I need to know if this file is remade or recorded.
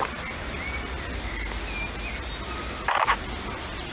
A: recorded